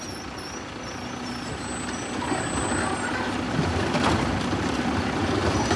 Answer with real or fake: real